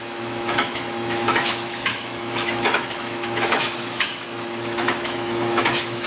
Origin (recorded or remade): remade